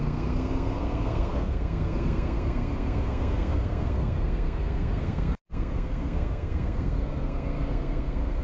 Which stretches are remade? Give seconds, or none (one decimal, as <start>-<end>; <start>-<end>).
0.0-8.4